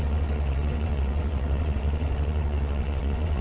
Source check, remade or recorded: remade